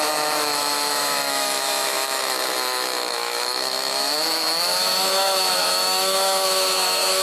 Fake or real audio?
fake